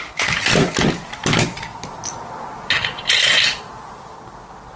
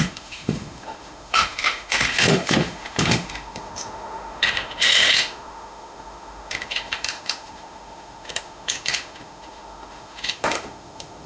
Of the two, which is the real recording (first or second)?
first